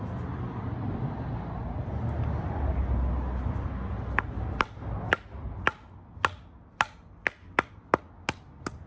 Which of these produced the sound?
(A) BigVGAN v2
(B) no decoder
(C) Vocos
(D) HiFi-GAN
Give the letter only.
B